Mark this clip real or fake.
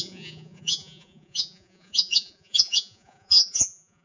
fake